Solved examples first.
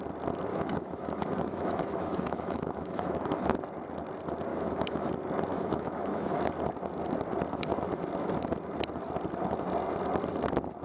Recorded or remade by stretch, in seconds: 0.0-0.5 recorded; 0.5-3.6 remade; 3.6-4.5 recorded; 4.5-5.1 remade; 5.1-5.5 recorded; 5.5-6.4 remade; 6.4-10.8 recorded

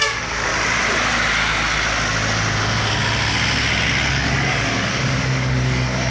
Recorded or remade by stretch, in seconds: 0.0-0.5 remade; 0.5-4.1 recorded; 4.1-6.1 remade

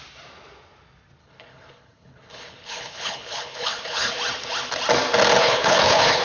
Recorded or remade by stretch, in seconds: 0.0-1.2 recorded; 1.2-4.1 remade; 4.1-5.4 recorded; 5.4-6.2 remade

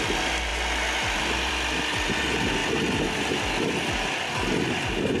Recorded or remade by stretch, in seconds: 0.0-5.2 recorded

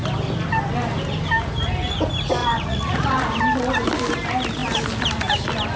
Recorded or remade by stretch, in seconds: 0.0-2.4 recorded; 2.4-3.3 remade; 3.3-5.8 recorded